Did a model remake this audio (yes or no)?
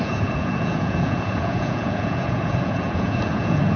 yes